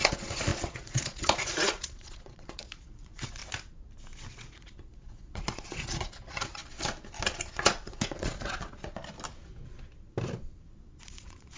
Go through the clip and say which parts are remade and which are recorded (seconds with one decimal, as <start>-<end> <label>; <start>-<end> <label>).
0.0-3.4 remade; 3.4-4.3 recorded; 4.3-6.6 remade; 6.6-7.5 recorded; 7.5-9.0 remade; 9.0-10.9 recorded; 10.9-11.6 remade